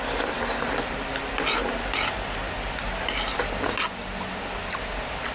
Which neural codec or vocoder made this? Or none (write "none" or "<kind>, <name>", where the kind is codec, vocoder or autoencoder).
none